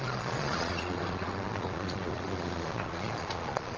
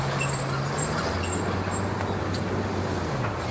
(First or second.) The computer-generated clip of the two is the first